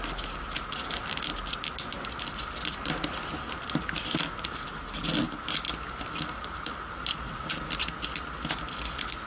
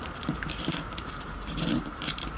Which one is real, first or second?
first